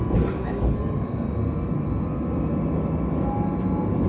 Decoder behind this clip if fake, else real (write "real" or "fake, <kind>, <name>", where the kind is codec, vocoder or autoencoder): real